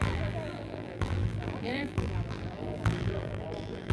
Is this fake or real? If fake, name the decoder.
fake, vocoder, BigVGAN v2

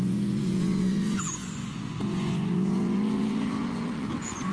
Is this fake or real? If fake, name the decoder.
fake, vocoder, Vocos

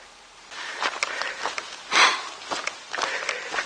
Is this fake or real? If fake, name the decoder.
real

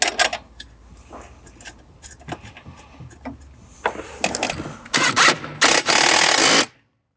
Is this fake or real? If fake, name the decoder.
real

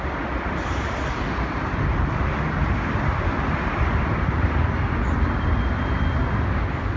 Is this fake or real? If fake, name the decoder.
real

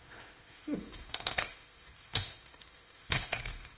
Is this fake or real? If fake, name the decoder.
fake, autoencoder, DAC-VAE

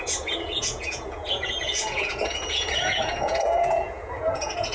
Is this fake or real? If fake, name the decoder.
fake, vocoder, Vocos